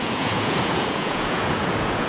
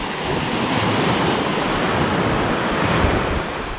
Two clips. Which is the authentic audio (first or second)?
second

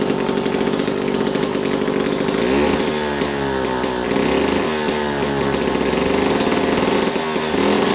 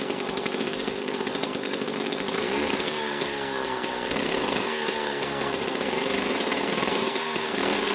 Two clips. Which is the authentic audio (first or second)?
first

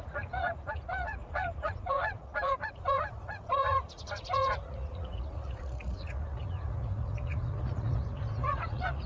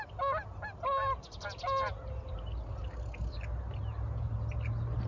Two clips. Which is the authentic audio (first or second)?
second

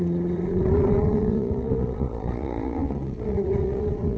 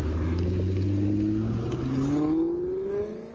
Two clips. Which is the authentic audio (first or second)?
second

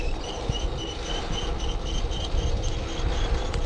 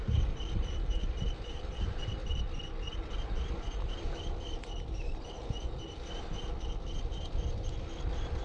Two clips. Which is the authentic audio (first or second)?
first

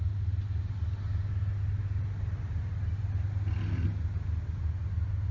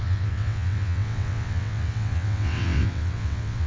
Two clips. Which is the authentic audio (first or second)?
first